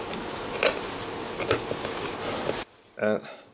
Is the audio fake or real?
real